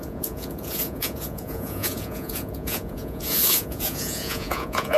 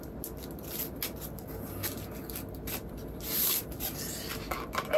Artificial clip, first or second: first